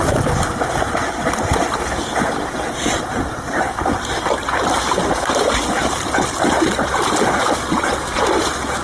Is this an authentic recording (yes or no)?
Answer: yes